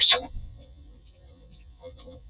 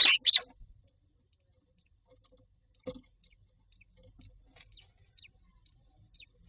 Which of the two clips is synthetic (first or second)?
first